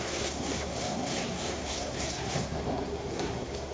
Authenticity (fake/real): fake